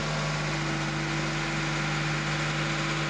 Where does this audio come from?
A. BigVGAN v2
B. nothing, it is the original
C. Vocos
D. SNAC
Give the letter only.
B